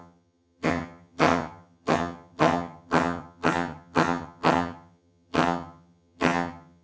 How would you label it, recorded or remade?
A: remade